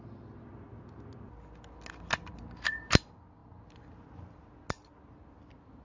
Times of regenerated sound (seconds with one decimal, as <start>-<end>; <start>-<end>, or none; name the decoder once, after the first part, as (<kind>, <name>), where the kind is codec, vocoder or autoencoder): none